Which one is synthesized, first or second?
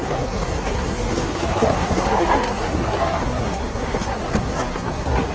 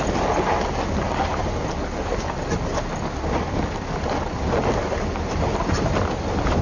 first